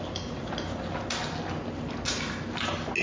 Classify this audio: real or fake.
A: real